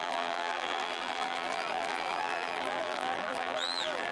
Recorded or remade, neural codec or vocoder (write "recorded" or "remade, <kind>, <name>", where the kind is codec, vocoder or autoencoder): remade, vocoder, BigVGAN v2